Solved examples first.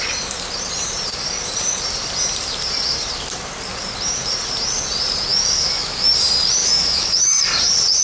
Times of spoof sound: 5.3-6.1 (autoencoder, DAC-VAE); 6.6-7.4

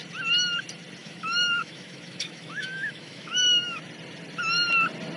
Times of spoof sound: 1.0-3.8 (autoencoder, DAC-VAE)

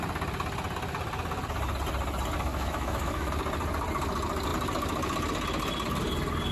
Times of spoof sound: 2.5-3.3 (autoencoder, DAC-VAE)

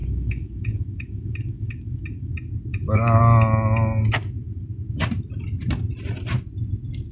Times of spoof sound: 0.0-2.3 (autoencoder, DAC-VAE); 2.7-3.2

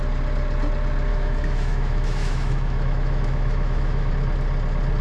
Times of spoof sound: 1.1-4.1 (autoencoder, DAC-VAE)

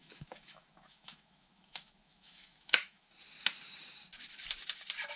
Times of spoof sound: 0.0-3.1 (autoencoder, DAC-VAE)